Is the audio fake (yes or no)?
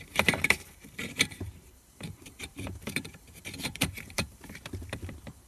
yes